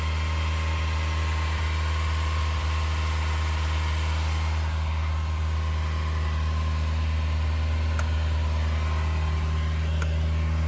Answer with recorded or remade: recorded